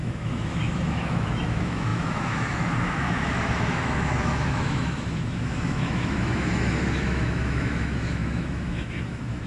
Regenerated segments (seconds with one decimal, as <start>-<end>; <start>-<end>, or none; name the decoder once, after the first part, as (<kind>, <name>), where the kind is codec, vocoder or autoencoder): 0.0-9.5 (autoencoder, DAC-VAE)